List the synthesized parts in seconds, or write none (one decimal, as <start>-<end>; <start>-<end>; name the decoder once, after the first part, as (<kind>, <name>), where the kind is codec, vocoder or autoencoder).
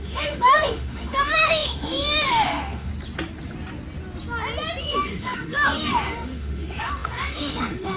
0.0-2.9 (autoencoder, DAC-VAE); 4.8-8.0